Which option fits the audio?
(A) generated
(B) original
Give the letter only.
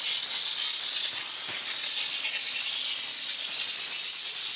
B